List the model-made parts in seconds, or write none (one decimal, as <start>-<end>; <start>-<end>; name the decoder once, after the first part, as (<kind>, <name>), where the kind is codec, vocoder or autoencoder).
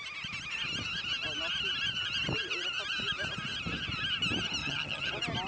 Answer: 4.6-5.1 (vocoder, HiFi-GAN)